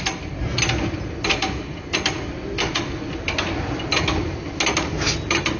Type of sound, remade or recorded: recorded